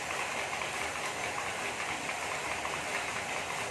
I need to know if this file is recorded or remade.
recorded